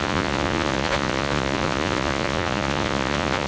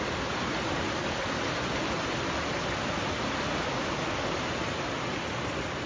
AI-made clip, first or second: first